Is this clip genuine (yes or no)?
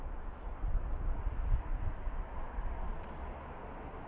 yes